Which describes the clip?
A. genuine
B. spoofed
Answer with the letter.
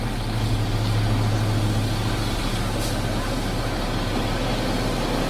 A